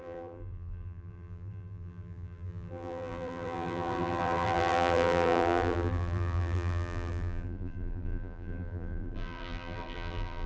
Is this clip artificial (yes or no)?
yes